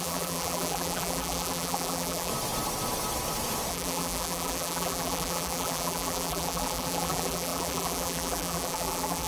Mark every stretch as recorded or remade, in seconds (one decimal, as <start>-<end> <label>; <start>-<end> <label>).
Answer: 0.0-2.3 remade; 2.3-3.7 recorded; 3.7-9.3 remade